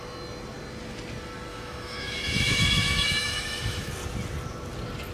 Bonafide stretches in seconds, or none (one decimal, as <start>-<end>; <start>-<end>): 0.0-1.5; 3.9-5.1